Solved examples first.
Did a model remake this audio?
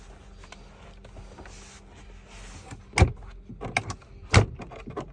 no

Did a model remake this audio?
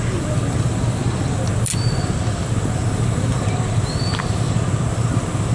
no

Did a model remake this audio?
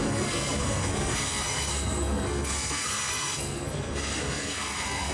yes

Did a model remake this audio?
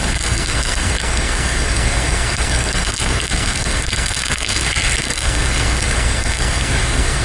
yes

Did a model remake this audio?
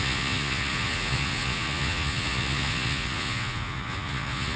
yes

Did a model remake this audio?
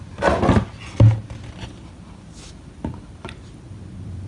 no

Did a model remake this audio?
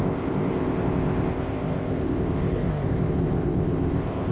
yes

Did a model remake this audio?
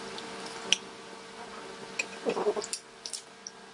no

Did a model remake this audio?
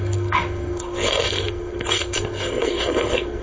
yes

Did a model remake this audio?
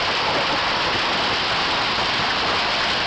no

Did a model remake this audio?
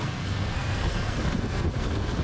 yes